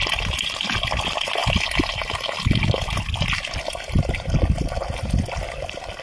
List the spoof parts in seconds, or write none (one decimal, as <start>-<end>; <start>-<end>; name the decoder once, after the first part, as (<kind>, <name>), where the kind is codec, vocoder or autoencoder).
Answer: none